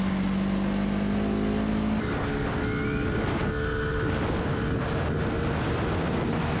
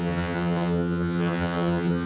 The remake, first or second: second